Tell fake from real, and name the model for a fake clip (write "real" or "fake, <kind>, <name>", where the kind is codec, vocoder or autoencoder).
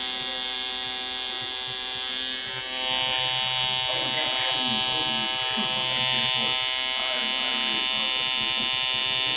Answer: real